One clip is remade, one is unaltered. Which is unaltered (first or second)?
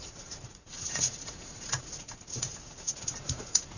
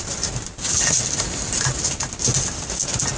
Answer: second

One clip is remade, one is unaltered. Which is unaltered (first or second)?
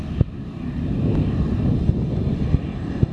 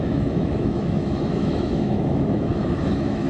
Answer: first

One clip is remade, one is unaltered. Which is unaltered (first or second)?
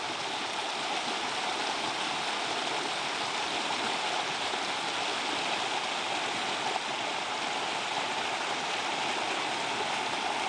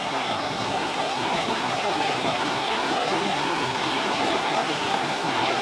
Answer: first